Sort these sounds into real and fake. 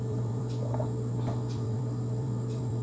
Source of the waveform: fake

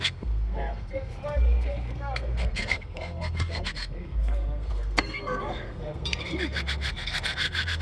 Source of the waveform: fake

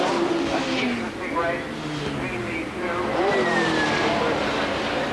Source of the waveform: real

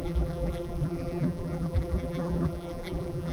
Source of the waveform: fake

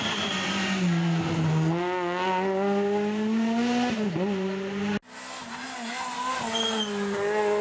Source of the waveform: real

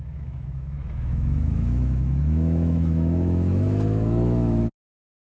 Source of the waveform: fake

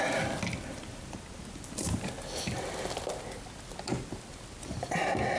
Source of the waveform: real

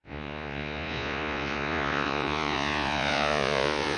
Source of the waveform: fake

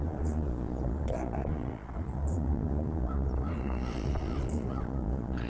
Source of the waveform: fake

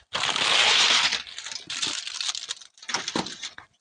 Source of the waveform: real